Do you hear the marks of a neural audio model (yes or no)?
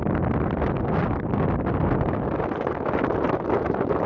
no